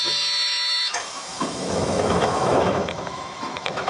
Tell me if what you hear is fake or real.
fake